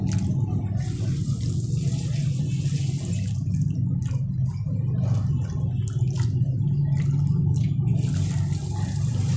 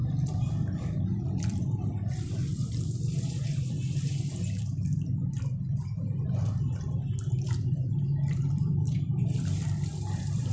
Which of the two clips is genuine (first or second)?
first